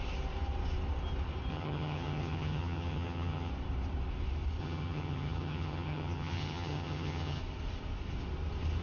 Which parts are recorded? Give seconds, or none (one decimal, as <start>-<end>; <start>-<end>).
0.0-1.5; 3.5-4.6; 7.4-8.8